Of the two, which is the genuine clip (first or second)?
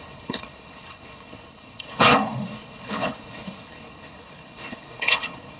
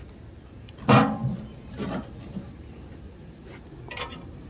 second